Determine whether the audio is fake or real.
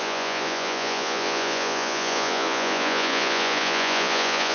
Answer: fake